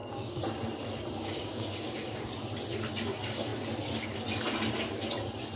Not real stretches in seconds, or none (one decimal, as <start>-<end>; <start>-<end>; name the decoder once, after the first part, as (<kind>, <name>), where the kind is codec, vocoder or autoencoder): 0.0-0.5 (codec, DAC); 1.2-2.3